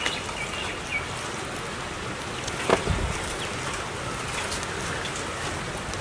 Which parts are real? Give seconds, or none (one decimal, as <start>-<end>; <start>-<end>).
0.0-6.0